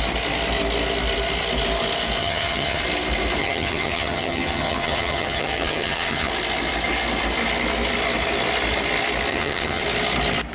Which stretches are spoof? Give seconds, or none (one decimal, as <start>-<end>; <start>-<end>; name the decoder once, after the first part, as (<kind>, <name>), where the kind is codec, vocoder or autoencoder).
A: 2.2-2.8 (vocoder, HiFi-GAN); 3.4-6.3; 9.3-9.8